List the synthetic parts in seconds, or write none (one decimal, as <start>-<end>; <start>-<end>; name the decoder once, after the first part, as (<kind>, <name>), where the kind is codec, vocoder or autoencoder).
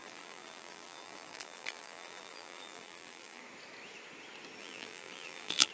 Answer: 0.0-3.4 (vocoder, BigVGAN v2); 4.6-5.7